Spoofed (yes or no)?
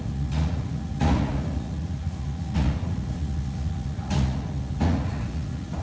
yes